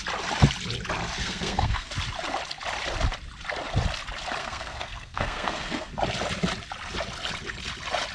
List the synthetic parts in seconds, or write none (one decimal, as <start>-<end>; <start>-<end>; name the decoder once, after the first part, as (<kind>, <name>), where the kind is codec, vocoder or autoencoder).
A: 1.2-1.9 (codec, SNAC); 4.4-5.9